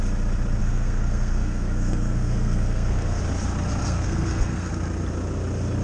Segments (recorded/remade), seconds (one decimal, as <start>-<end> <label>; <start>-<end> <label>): 0.0-0.6 recorded; 0.6-3.2 remade; 3.2-3.8 recorded; 3.8-4.7 remade; 4.7-5.8 recorded